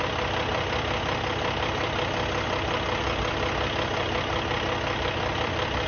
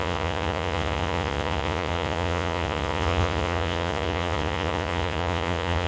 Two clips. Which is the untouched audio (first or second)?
first